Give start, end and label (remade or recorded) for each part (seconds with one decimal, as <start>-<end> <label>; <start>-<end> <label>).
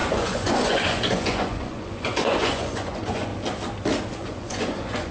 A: 0.0-3.3 remade; 3.3-4.1 recorded; 4.1-5.1 remade